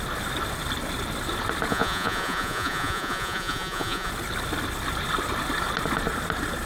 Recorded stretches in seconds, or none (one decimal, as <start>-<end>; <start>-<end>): 0.0-1.7; 4.1-6.7